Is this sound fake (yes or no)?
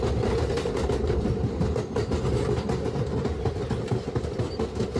no